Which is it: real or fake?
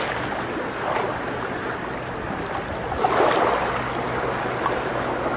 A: real